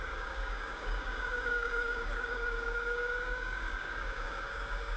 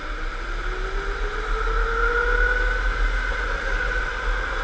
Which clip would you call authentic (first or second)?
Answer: second